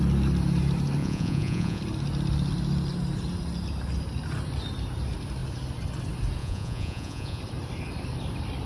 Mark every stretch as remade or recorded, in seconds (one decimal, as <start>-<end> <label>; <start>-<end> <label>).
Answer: 0.0-1.0 recorded; 1.0-1.8 remade; 1.8-6.4 recorded; 6.4-7.4 remade; 7.4-8.7 recorded